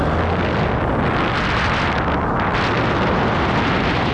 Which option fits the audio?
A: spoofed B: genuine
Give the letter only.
B